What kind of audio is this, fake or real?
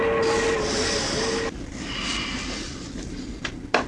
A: real